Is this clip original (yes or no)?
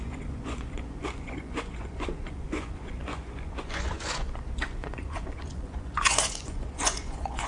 no